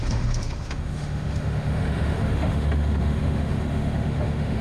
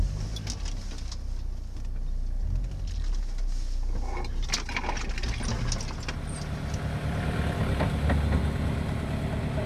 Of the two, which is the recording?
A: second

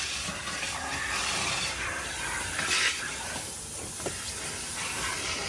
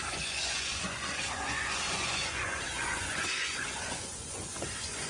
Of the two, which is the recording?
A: first